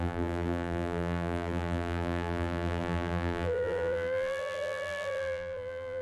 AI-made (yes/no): yes